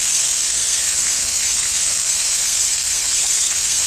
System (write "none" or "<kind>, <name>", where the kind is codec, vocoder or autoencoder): codec, SNAC